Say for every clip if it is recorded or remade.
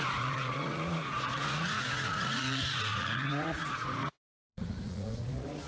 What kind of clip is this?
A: remade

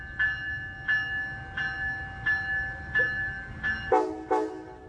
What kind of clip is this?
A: recorded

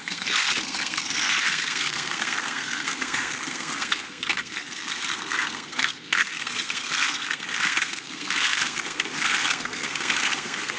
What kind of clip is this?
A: remade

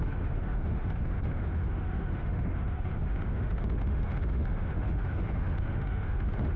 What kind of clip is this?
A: remade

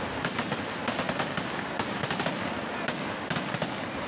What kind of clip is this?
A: recorded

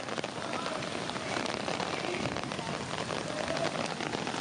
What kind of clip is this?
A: recorded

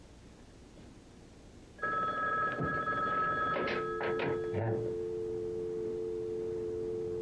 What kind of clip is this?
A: recorded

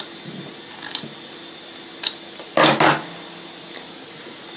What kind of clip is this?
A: recorded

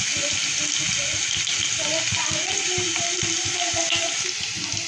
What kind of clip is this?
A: recorded